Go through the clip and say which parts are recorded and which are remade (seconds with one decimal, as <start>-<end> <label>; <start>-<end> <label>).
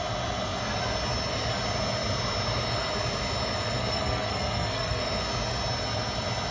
0.0-3.8 recorded; 3.8-5.0 remade; 5.0-6.5 recorded